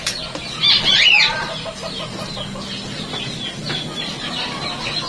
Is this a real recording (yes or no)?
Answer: yes